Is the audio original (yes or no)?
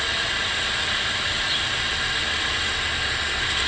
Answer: yes